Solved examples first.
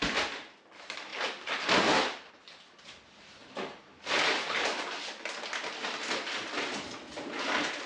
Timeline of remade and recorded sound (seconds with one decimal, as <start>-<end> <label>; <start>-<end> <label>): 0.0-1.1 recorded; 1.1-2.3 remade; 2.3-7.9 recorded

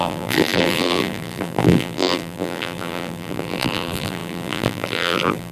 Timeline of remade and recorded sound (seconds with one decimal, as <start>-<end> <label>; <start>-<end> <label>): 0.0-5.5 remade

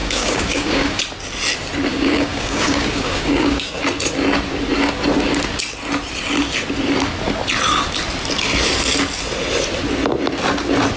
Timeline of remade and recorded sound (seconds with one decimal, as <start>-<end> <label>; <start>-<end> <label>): 0.0-1.0 remade; 1.0-1.9 recorded; 1.9-3.8 remade; 3.8-11.0 recorded

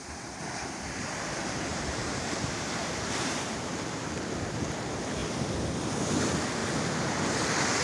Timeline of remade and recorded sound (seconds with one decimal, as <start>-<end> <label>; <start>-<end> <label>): 0.0-1.7 recorded; 1.7-4.0 remade; 4.0-7.8 recorded

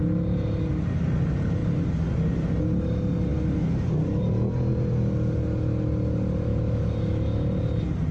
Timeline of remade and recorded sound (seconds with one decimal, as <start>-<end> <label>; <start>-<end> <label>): 0.0-6.5 recorded; 6.5-7.5 remade; 7.5-8.1 recorded